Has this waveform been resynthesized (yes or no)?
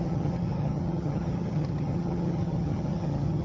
yes